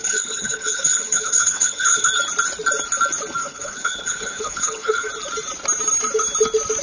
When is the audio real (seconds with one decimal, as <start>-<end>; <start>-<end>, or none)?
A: 2.1-3.4; 5.1-6.8

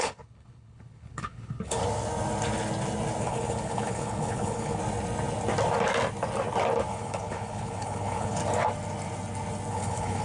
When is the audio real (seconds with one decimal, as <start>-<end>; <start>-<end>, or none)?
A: 1.8-3.2; 4.8-6.9; 8.4-9.7

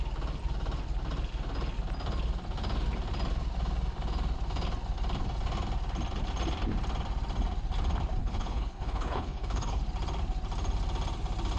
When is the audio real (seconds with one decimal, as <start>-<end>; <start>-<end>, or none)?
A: 0.0-8.2; 9.8-11.6

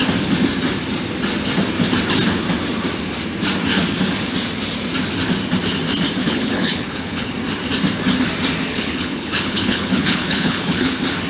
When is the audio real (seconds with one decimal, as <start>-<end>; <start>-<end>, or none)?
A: 0.0-6.2; 7.3-8.7; 10.9-11.3

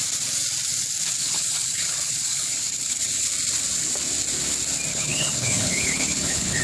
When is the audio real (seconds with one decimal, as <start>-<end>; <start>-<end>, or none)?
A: 0.0-1.2; 3.3-4.9

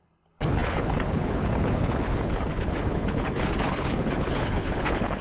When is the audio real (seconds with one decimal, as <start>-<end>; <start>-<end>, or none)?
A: none

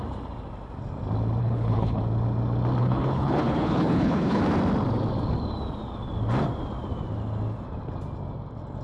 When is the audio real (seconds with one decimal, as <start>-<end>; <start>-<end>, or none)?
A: 0.0-1.4; 2.0-2.8; 4.4-8.8